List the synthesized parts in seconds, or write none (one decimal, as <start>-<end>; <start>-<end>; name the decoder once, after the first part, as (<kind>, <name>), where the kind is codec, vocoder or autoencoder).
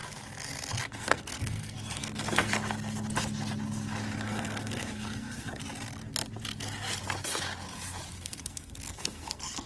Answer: 0.8-2.5 (codec, SNAC); 4.2-5.6; 8.1-9.7